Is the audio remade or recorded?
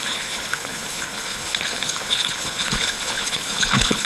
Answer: remade